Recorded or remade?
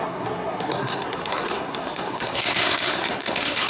remade